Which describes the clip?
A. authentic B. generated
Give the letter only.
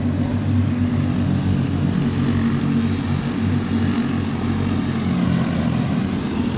A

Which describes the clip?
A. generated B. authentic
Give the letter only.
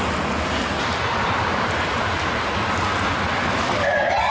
B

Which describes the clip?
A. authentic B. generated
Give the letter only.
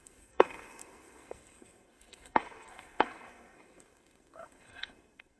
B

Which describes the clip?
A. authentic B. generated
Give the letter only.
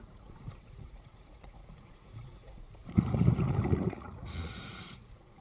B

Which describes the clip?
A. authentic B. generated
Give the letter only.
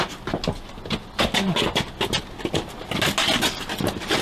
A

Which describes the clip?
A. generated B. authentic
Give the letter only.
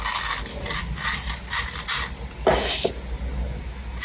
B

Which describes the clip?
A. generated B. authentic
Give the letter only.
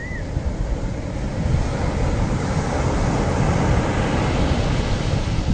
B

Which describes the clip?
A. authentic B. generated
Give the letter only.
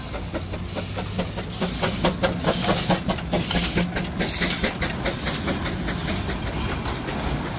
A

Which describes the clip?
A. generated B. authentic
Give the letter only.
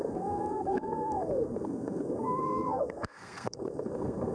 A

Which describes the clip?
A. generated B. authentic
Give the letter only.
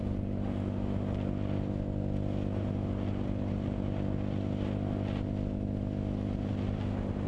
B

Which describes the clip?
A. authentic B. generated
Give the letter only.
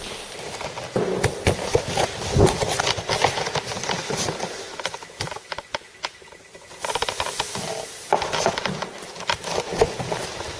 A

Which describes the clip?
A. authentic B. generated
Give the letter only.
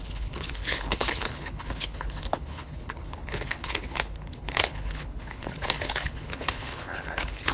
B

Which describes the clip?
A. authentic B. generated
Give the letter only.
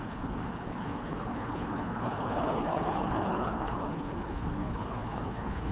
B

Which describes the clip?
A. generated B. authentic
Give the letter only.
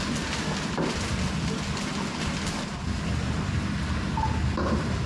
B